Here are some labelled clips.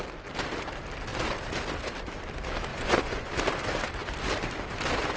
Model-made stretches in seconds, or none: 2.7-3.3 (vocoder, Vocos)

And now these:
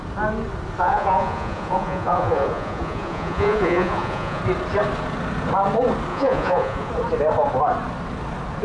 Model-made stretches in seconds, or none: 0.8-4.4 (vocoder, Vocos); 6.1-6.9

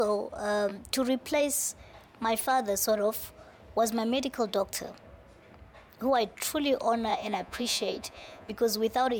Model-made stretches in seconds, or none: 7.1-8.5 (vocoder, Vocos)